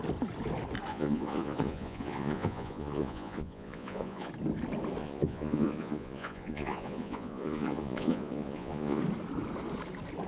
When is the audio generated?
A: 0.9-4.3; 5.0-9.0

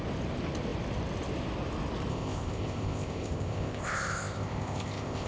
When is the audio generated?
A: 2.1-5.3

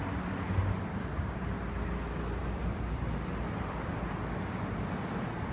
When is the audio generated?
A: 0.6-1.4; 2.4-3.9

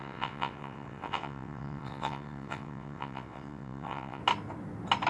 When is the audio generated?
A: 0.0-4.2

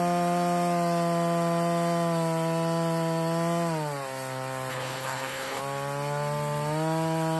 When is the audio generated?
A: 4.7-5.6

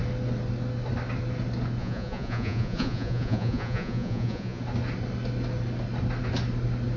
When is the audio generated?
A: 1.8-4.6